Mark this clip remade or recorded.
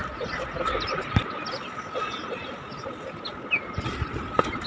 recorded